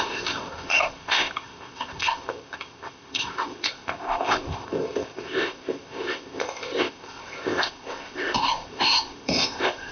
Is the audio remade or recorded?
remade